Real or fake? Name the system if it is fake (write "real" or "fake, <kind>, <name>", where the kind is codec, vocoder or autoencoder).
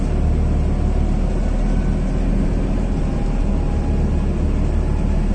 real